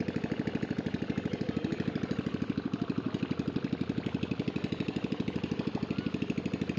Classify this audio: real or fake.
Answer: real